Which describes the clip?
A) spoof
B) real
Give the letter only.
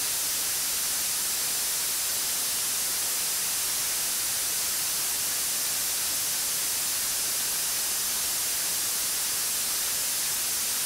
B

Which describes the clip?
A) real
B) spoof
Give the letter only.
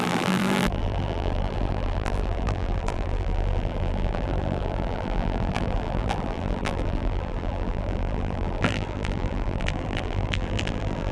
B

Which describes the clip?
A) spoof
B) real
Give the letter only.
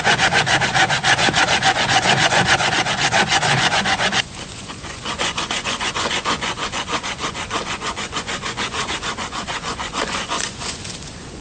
A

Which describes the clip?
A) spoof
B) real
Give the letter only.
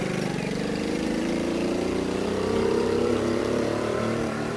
A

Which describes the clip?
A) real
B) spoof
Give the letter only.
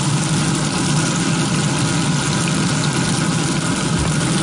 A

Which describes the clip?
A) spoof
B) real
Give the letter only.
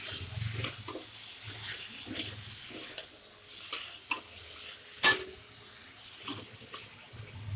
B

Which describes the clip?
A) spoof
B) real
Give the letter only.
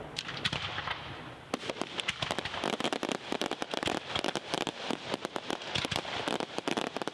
A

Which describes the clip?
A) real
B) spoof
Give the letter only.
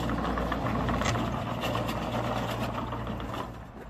A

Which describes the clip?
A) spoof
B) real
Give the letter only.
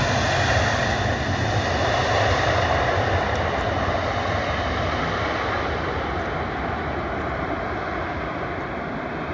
B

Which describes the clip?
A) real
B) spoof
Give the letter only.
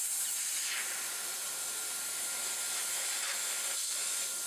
A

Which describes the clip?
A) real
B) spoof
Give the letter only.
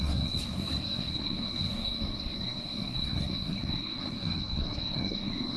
B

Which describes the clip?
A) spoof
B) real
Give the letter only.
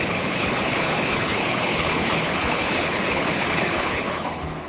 A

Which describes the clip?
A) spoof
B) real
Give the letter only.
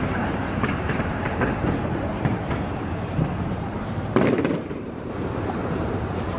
A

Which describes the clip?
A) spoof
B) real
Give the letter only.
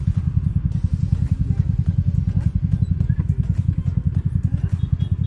B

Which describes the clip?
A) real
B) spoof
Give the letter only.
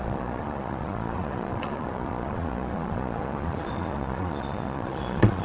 B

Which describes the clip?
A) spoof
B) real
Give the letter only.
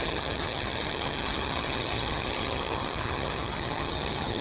A